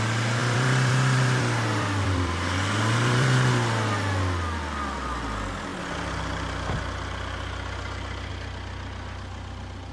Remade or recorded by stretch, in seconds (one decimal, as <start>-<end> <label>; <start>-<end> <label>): 0.0-0.4 recorded; 0.4-3.5 remade; 3.5-9.9 recorded